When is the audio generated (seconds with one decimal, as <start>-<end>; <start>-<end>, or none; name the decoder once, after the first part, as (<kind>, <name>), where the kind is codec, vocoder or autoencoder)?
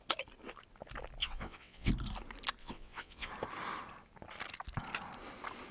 1.2-1.9 (vocoder, WaveNeXt); 2.6-3.3